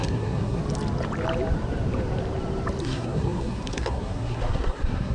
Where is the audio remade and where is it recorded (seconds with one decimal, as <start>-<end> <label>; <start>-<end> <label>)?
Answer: 0.0-0.6 remade; 0.6-2.8 recorded; 2.8-5.1 remade